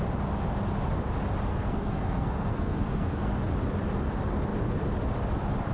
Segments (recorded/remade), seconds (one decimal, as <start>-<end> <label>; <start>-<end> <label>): 0.0-1.5 recorded; 1.5-3.4 remade; 3.4-5.7 recorded